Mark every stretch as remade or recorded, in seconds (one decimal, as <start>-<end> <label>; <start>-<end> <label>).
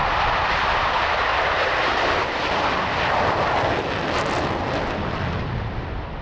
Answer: 0.0-0.7 recorded; 0.7-6.2 remade